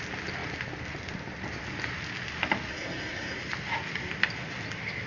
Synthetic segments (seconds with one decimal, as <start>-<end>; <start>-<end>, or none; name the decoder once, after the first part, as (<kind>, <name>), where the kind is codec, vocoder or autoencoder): 2.7-3.4 (codec, SNAC)